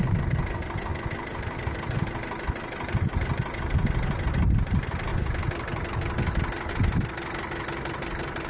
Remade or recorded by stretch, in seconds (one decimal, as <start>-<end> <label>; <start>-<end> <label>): 0.0-0.9 remade; 0.9-4.3 recorded; 4.3-5.1 remade; 5.1-6.7 recorded; 6.7-8.5 remade